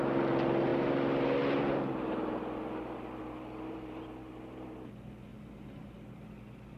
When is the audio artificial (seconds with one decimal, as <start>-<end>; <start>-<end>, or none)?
5.3-5.9